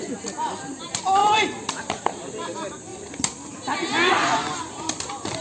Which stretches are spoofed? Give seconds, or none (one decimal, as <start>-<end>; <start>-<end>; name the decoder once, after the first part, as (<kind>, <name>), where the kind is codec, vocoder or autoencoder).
1.2-2.3 (vocoder, BigVGAN v2)